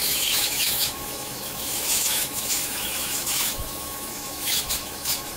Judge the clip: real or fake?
fake